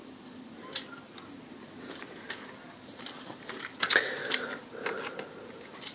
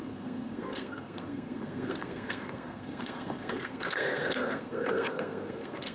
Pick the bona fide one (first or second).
first